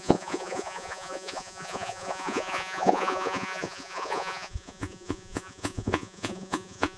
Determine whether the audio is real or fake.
fake